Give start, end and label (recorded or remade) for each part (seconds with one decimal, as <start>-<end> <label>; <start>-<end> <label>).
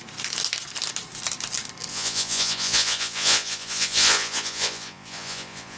0.0-1.9 recorded; 1.9-5.8 remade